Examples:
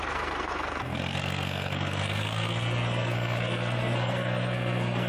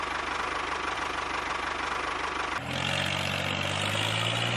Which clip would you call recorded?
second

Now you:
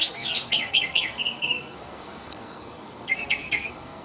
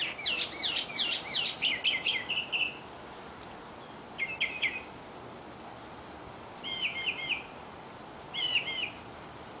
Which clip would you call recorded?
second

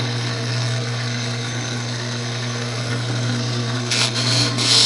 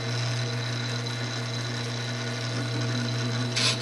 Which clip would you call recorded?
second